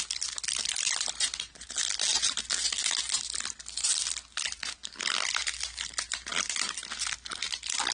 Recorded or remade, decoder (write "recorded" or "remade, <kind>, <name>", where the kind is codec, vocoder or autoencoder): recorded